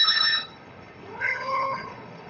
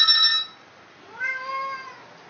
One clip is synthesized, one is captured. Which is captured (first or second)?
second